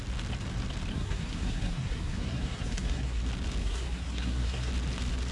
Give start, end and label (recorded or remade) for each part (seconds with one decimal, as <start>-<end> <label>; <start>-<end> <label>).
0.0-0.9 recorded; 0.9-3.2 remade; 3.2-3.6 recorded; 3.6-4.7 remade; 4.7-5.3 recorded

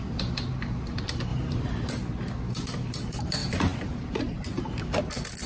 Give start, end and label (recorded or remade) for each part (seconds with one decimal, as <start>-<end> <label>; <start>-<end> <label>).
0.0-1.3 recorded; 1.3-1.9 remade; 1.9-3.4 recorded; 3.4-5.0 remade; 5.0-5.5 recorded

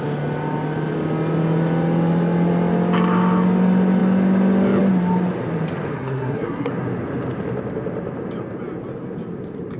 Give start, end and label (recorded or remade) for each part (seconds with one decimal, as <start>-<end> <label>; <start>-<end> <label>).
0.0-5.9 recorded; 5.9-6.7 remade; 6.7-9.8 recorded

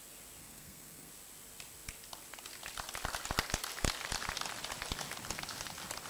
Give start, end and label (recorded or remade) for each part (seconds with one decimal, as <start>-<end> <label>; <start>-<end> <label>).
0.0-0.4 recorded; 0.4-1.1 remade; 1.1-6.1 recorded

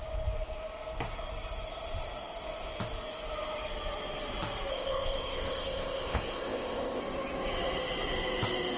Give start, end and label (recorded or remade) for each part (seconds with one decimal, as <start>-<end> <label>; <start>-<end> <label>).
0.0-4.7 recorded; 4.7-7.0 remade; 7.0-8.8 recorded

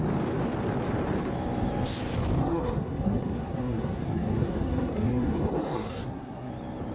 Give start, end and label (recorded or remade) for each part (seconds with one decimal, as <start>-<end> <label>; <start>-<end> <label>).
0.0-2.4 recorded; 2.4-6.5 remade; 6.5-6.9 recorded